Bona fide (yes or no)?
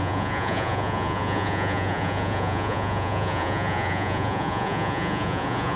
no